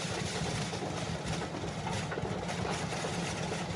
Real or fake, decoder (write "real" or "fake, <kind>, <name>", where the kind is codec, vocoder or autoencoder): real